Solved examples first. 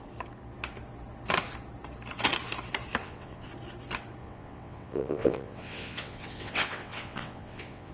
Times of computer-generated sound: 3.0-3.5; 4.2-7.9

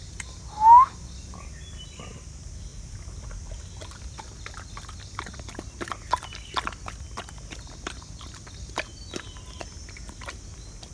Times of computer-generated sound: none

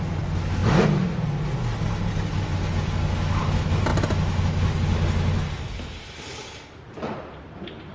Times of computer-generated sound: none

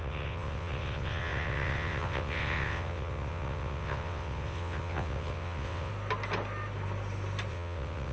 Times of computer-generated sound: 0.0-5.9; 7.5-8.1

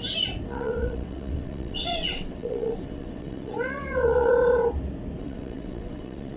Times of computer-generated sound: 0.5-4.3; 5.2-6.4